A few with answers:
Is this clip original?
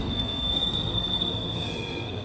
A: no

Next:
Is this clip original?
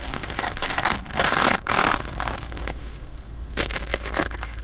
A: no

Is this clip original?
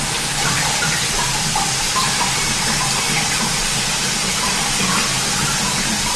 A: yes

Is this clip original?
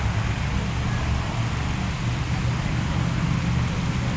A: yes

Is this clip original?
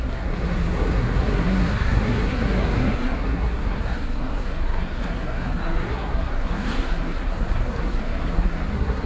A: no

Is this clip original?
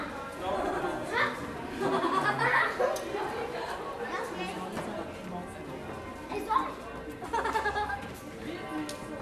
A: yes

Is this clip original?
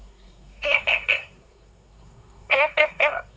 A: no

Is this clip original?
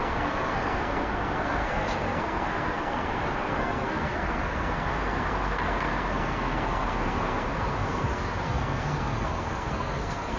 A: no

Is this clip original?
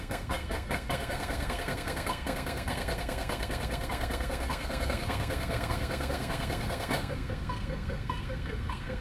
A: no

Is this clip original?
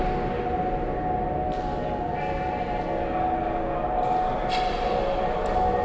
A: yes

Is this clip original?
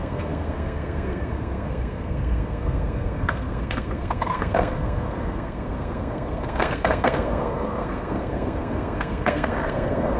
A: no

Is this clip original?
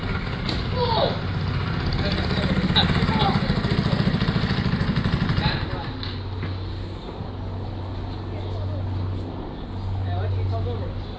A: yes